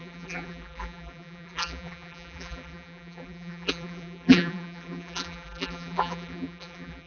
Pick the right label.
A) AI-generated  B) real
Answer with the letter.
A